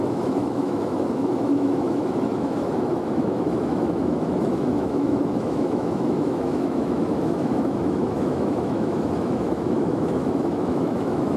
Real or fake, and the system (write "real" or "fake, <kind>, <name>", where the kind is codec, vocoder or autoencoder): fake, autoencoder, DAC-VAE